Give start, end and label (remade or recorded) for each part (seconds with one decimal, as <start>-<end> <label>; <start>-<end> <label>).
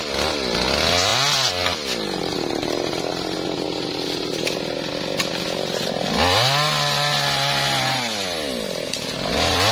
0.0-9.7 recorded